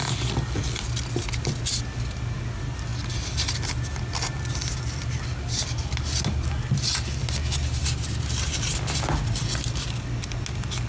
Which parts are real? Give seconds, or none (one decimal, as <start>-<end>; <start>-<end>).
0.0-7.8; 8.8-10.9